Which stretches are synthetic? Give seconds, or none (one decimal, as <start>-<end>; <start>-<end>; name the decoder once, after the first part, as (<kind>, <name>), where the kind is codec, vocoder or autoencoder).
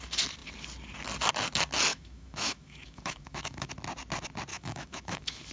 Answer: 1.9-3.7 (autoencoder, DAC-VAE); 4.5-5.5